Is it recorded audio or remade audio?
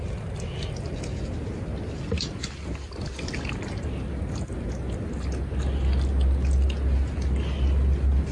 recorded